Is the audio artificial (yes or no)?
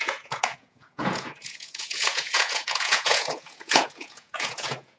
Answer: yes